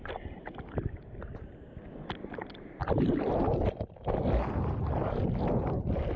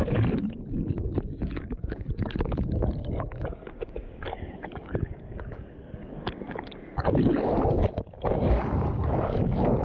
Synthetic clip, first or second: second